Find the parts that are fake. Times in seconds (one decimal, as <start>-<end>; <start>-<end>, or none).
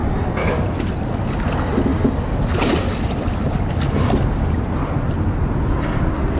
none